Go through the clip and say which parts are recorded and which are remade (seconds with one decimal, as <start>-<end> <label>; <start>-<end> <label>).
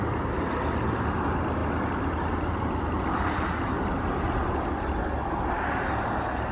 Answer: 0.0-6.5 recorded